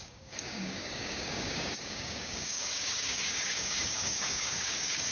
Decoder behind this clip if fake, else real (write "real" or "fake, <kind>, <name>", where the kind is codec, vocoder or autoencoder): fake, codec, DAC